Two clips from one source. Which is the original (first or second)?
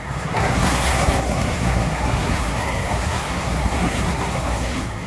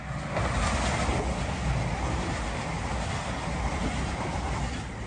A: second